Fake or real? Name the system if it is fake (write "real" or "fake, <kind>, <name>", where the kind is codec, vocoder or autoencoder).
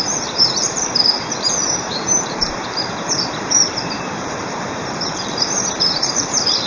fake, vocoder, BigVGAN v2